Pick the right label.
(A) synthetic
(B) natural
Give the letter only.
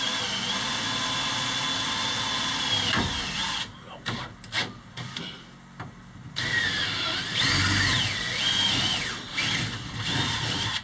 B